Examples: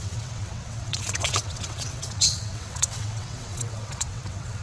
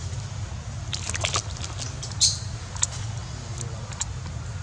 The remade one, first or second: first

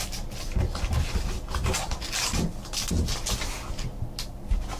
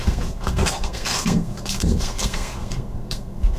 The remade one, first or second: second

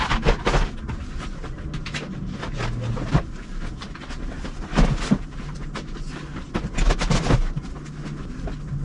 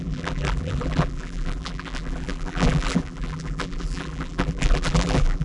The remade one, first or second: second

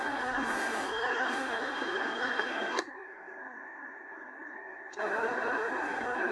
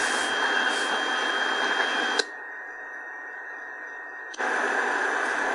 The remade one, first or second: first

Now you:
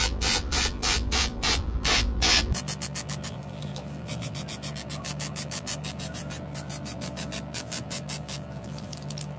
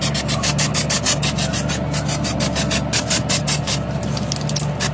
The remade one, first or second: first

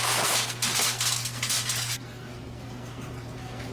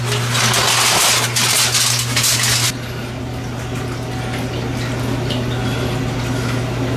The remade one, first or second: first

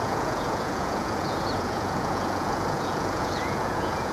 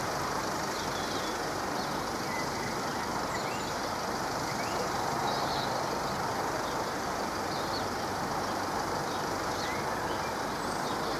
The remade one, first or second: first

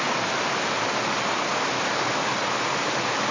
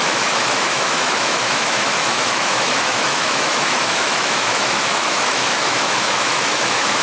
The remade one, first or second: second